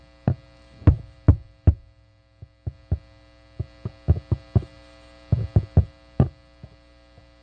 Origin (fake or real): real